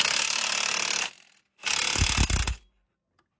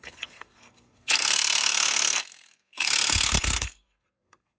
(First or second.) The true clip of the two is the first